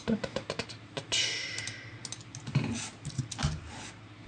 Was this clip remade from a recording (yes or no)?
no